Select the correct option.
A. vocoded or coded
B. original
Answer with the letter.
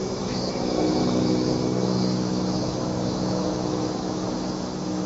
A